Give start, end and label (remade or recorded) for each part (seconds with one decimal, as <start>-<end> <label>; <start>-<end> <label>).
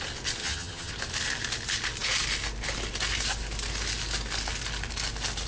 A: 0.0-0.4 recorded; 0.4-0.9 remade; 0.9-5.5 recorded